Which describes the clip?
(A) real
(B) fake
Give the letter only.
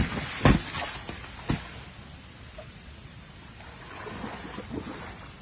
A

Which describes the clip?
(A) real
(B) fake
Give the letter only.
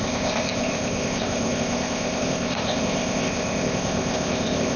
B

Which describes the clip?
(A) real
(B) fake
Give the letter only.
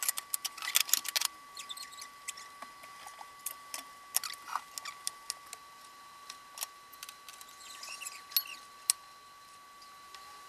A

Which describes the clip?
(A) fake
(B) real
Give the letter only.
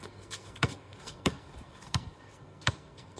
A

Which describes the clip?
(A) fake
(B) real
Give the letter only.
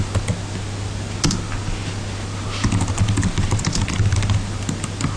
B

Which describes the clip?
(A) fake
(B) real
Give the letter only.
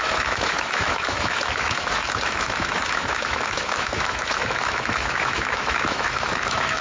A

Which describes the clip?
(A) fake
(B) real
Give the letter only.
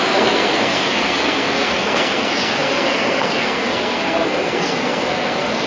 A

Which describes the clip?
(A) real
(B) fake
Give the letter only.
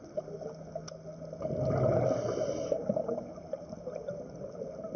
A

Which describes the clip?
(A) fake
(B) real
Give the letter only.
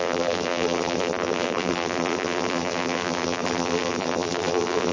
A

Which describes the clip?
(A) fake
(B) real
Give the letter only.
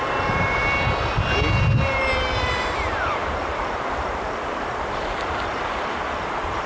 A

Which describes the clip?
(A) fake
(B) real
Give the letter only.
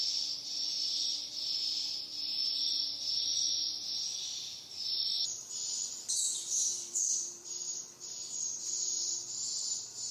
A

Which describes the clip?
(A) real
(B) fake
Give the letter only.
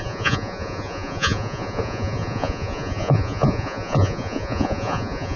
B